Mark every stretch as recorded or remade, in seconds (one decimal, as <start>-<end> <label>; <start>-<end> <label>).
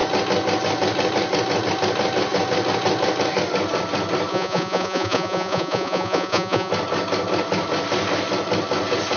0.0-4.3 recorded; 4.3-6.7 remade; 6.7-9.2 recorded